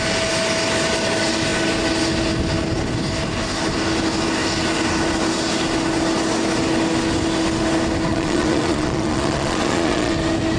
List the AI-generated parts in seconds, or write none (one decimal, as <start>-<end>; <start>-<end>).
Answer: 8.1-10.1